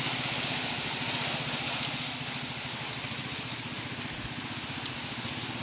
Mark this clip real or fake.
real